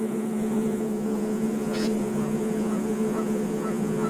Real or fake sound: fake